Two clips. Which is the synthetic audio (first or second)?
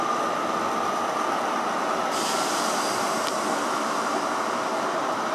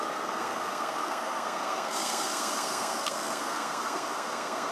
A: second